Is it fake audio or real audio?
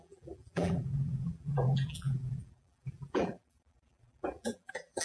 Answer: fake